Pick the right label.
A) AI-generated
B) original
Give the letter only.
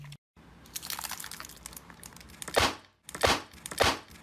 B